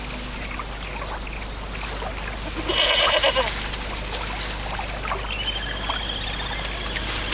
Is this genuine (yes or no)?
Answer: yes